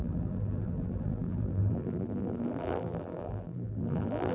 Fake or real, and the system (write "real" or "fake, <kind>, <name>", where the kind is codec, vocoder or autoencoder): fake, vocoder, BigVGAN v2